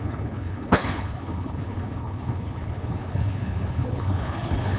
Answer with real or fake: fake